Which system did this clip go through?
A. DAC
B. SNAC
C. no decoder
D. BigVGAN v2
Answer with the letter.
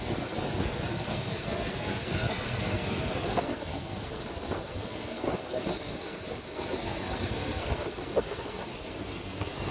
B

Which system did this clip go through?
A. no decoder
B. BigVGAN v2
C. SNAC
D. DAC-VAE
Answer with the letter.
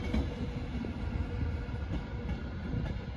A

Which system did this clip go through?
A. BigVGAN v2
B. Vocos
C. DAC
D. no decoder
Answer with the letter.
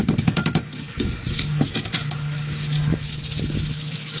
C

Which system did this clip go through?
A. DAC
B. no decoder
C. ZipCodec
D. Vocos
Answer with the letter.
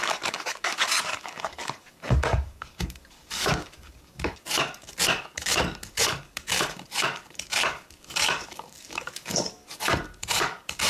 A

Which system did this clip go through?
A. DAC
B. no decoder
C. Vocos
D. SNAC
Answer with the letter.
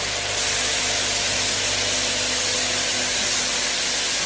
B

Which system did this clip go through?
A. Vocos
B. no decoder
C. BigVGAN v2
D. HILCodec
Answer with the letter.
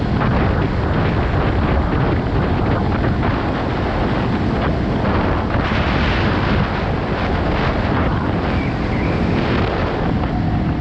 B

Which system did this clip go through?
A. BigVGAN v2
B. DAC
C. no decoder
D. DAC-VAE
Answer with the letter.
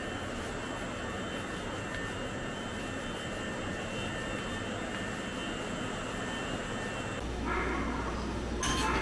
C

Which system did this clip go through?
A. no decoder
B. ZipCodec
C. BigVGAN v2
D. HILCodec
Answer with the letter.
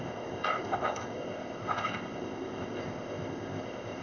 B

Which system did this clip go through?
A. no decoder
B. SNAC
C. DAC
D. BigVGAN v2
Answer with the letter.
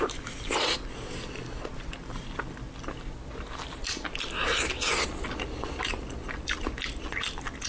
A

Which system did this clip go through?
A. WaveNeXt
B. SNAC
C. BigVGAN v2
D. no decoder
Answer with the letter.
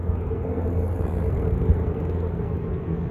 B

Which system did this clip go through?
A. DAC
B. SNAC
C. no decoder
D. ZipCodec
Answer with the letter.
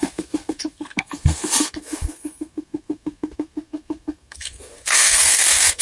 B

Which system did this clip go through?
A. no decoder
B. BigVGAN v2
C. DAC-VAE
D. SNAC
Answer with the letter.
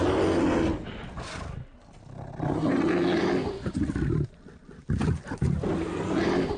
A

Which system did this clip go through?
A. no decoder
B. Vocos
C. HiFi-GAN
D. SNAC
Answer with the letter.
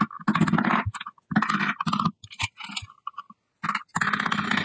A